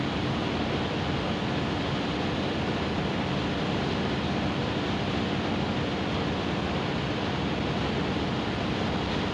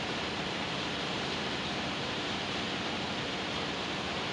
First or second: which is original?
first